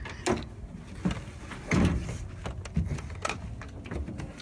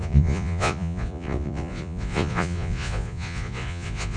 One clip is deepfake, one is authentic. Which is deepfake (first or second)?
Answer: second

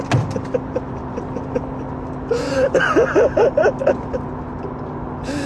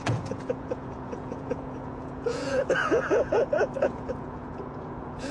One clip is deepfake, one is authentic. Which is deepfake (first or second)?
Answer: second